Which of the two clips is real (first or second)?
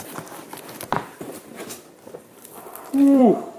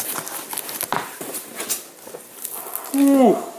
second